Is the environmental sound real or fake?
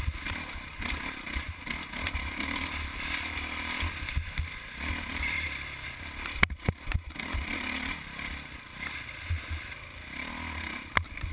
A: real